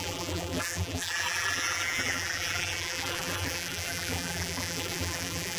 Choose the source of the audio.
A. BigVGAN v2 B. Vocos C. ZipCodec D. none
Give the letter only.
A